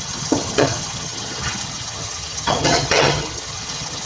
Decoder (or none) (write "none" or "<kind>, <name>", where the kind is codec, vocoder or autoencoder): vocoder, HiFi-GAN